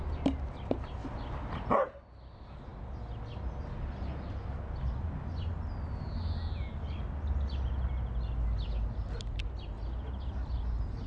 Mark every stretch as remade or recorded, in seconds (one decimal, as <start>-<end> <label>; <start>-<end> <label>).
0.0-11.1 recorded